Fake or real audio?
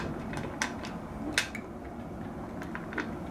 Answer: real